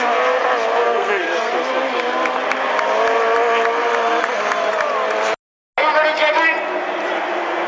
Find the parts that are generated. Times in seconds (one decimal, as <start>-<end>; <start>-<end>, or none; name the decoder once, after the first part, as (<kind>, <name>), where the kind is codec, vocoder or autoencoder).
0.8-1.5 (codec, SNAC)